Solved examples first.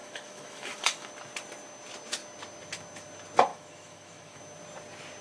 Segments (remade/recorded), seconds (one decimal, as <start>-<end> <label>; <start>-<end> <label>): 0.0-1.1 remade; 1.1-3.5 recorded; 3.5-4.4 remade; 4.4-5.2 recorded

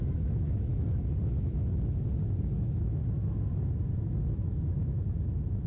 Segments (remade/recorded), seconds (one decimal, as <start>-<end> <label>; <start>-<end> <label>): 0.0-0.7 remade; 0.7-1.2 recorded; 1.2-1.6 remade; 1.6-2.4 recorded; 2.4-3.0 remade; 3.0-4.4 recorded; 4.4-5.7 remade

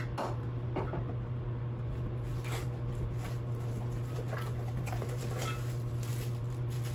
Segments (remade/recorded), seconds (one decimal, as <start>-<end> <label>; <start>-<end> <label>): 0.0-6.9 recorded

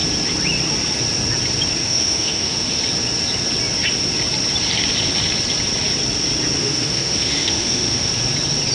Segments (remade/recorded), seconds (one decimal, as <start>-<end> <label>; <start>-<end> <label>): 0.0-1.8 recorded; 1.8-2.8 remade; 2.8-6.6 recorded; 6.6-8.1 remade; 8.1-8.7 recorded

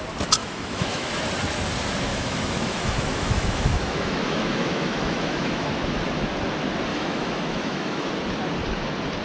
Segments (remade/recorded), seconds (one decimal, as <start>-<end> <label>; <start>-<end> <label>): 0.0-0.4 recorded; 0.4-1.1 remade; 1.1-2.1 recorded; 2.1-5.7 remade; 5.7-6.9 recorded; 6.9-8.1 remade; 8.1-9.2 recorded

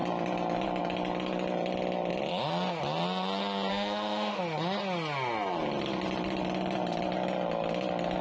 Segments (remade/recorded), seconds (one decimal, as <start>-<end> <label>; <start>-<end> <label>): 0.0-3.7 recorded; 3.7-4.4 remade; 4.4-8.2 recorded

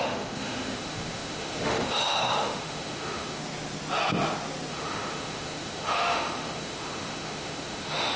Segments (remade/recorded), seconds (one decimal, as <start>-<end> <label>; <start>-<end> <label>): 0.0-3.4 remade; 3.4-4.7 recorded; 4.7-8.2 remade